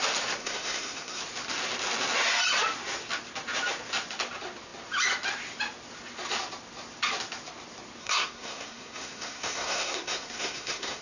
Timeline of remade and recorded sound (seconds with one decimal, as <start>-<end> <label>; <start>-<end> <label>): 0.0-0.4 recorded; 0.4-1.2 remade; 1.2-8.0 recorded; 8.0-11.0 remade